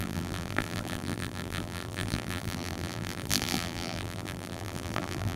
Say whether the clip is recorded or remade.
remade